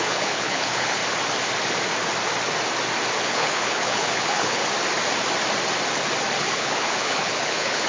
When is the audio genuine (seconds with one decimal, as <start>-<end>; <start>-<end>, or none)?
1.0-3.2; 4.6-6.4